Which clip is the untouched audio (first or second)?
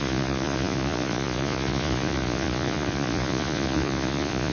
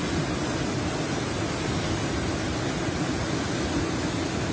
second